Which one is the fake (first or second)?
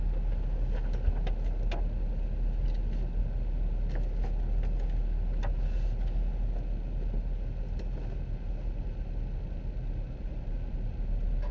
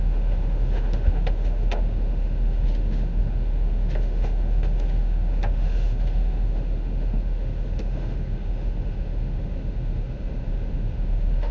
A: second